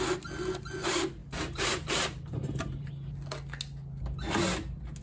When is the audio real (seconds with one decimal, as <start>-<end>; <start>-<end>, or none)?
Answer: 0.0-1.2; 2.9-5.0